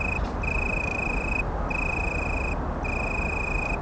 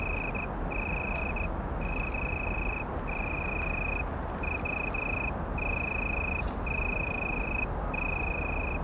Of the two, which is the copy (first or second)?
first